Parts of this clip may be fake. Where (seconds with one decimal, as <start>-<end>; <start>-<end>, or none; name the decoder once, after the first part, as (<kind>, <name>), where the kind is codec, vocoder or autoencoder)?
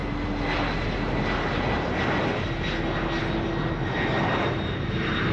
none